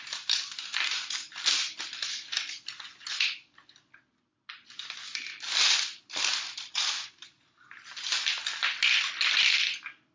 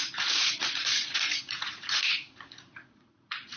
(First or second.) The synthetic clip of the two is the second